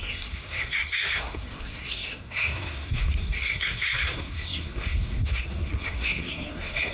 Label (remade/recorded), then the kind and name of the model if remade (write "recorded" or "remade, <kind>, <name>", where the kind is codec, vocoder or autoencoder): remade, codec, SNAC